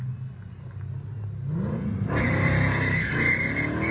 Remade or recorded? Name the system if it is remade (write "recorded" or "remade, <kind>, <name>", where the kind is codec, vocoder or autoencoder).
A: recorded